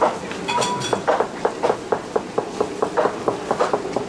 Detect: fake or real real